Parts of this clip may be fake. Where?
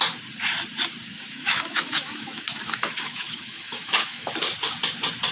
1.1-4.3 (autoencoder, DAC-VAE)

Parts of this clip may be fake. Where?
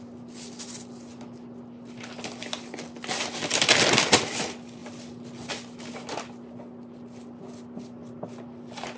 none